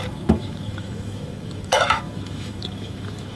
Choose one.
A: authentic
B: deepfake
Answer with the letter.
B